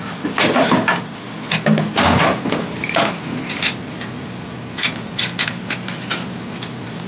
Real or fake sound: real